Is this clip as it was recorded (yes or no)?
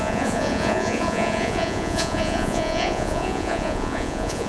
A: no